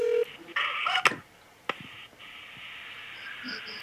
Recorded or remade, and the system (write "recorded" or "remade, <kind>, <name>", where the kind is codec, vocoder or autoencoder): recorded